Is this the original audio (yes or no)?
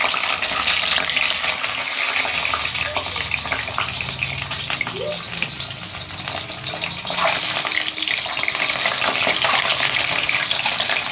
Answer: yes